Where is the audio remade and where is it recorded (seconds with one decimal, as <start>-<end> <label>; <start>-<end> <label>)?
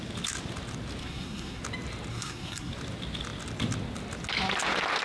0.0-1.0 recorded; 1.0-1.6 remade; 1.6-2.1 recorded; 2.1-2.7 remade; 2.7-5.0 recorded